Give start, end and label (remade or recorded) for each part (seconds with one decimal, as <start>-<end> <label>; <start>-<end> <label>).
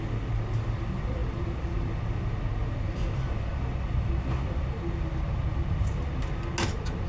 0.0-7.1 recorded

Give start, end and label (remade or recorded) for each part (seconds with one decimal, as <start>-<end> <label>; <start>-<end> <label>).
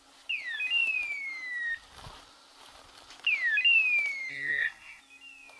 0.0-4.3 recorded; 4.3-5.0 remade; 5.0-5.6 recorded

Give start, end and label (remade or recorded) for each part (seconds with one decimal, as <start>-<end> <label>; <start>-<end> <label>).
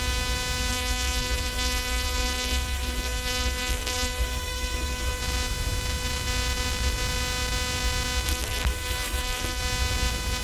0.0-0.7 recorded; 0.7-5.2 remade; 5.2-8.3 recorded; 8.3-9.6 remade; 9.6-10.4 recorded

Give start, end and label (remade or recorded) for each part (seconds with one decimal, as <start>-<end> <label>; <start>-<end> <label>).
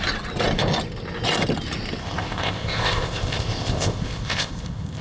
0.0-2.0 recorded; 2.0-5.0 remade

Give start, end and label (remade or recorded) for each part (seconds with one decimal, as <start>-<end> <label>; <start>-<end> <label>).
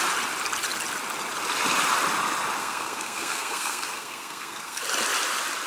0.0-2.6 recorded; 2.6-4.8 remade; 4.8-5.7 recorded